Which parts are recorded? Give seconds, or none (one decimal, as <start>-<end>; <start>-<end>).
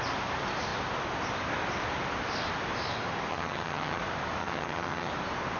0.0-3.3; 4.0-4.4; 5.1-5.6